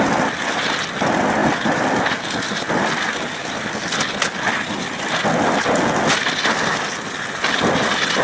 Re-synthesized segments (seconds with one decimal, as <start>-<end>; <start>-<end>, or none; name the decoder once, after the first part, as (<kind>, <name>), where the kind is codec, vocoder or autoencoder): none